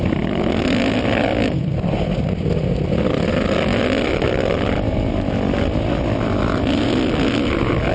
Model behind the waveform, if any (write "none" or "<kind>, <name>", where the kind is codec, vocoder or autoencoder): none